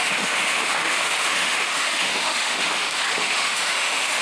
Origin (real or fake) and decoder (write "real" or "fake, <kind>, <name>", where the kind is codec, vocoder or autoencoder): fake, autoencoder, DAC-VAE